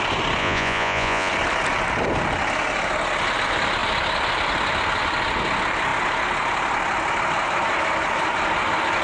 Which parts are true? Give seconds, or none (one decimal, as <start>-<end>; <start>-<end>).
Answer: 0.0-0.4; 1.3-9.0